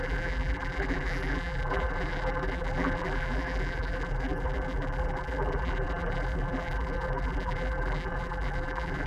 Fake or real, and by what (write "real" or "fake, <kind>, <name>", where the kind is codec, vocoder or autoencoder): fake, vocoder, BigVGAN v2